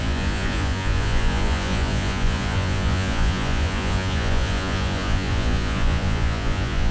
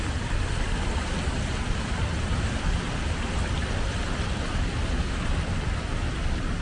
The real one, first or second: second